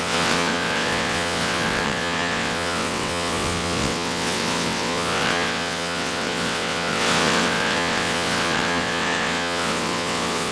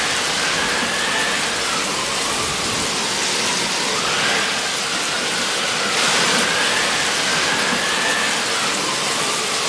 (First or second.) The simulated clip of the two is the first